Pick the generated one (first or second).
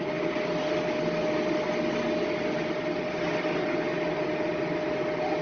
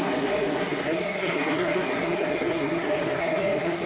second